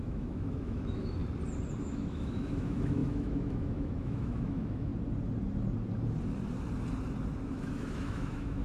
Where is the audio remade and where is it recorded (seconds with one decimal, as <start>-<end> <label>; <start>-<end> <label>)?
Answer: 0.0-1.2 remade; 1.2-1.8 recorded; 1.8-4.9 remade; 4.9-7.5 recorded; 7.5-8.6 remade